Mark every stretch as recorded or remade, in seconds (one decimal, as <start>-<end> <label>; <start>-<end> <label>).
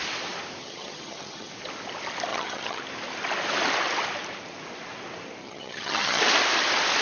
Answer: 0.0-0.6 recorded; 0.6-1.5 remade; 1.5-2.3 recorded; 2.3-2.8 remade; 2.8-5.4 recorded; 5.4-6.2 remade; 6.2-7.0 recorded